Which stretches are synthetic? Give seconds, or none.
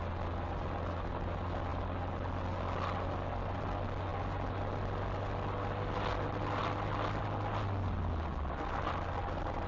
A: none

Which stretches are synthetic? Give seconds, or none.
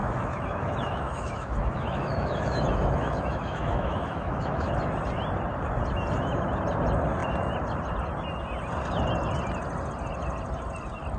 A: 0.0-4.7 (autoencoder, DAC-VAE)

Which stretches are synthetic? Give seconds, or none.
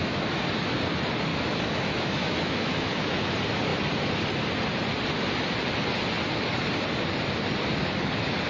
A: 0.0-0.5 (autoencoder, DAC-VAE); 1.3-3.3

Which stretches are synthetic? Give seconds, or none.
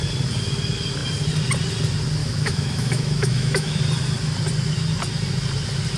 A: 2.2-3.8 (autoencoder, DAC-VAE)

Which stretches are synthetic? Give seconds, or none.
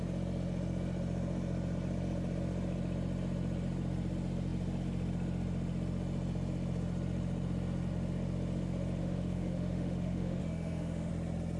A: 9.0-11.1 (autoencoder, DAC-VAE)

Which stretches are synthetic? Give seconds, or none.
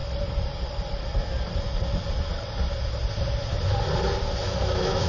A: 4.4-5.1 (autoencoder, DAC-VAE)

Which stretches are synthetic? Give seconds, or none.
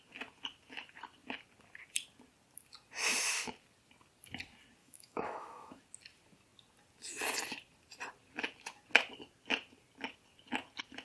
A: 4.8-5.8 (autoencoder, DAC-VAE)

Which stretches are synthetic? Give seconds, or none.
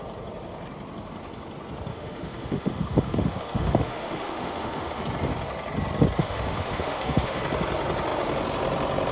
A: 1.9-5.0 (autoencoder, DAC-VAE); 6.2-7.4